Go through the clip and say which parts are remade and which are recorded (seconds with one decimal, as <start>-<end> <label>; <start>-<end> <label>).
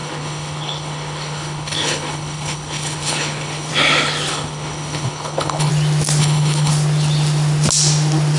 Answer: 0.0-3.7 remade; 3.7-4.3 recorded; 4.3-5.7 remade; 5.7-6.2 recorded; 6.2-6.7 remade; 6.7-8.4 recorded